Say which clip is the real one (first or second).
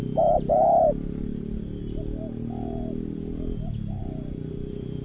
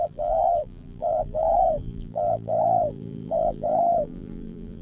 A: first